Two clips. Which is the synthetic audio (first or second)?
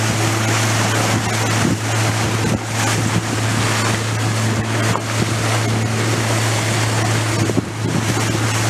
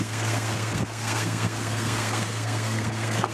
second